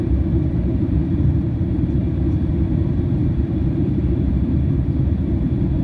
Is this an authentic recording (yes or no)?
no